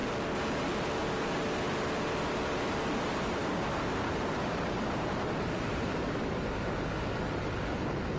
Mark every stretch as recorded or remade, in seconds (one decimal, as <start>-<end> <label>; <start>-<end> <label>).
0.0-3.4 recorded; 3.4-6.7 remade; 6.7-8.2 recorded